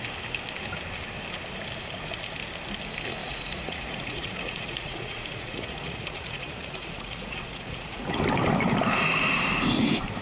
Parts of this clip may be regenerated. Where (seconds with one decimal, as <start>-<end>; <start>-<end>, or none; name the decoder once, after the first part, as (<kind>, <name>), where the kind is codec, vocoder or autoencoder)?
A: 3.2-8.2 (vocoder, Vocos)